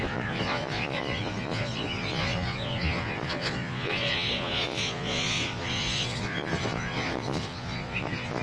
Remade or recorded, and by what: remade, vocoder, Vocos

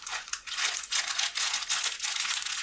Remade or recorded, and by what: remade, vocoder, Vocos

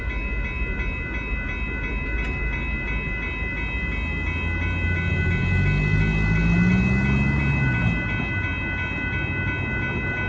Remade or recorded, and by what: recorded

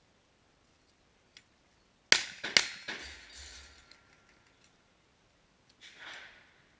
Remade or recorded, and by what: recorded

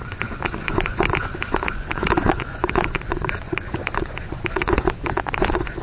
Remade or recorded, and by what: remade, vocoder, Vocos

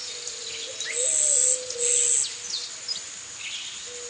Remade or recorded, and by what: recorded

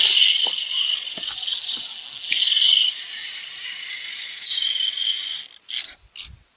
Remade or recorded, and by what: recorded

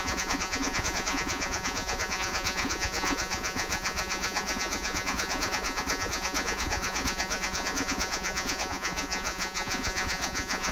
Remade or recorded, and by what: remade, vocoder, Vocos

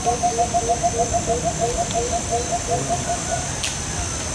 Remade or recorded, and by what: recorded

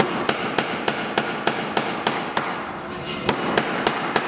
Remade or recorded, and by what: recorded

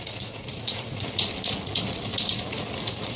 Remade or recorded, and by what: remade, vocoder, Vocos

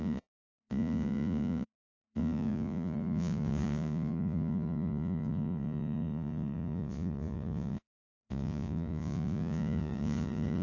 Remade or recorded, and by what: remade, vocoder, Vocos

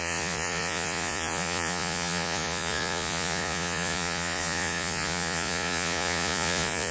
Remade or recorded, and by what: remade, vocoder, Vocos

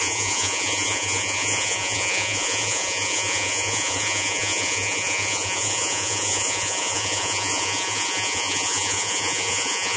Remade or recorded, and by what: remade, vocoder, Vocos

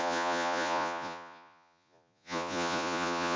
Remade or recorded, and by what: remade, vocoder, Vocos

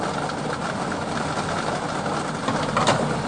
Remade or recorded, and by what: recorded